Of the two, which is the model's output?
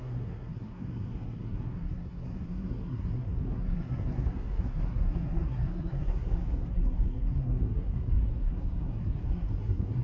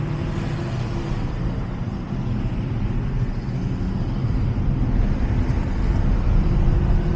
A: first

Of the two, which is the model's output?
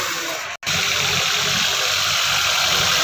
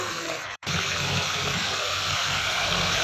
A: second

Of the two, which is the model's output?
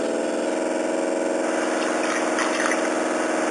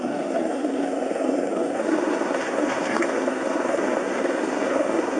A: second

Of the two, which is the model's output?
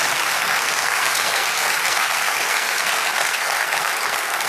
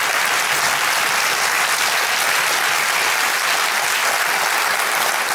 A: first